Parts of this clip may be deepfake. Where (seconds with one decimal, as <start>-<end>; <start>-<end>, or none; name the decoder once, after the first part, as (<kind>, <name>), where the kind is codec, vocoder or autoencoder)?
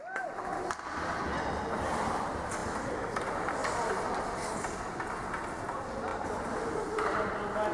6.1-7.3 (vocoder, BigVGAN v2)